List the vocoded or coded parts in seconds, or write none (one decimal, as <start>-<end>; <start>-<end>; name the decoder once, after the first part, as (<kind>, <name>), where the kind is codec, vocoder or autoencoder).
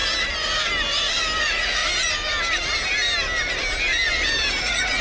1.4-1.8 (vocoder, Vocos); 4.6-5.0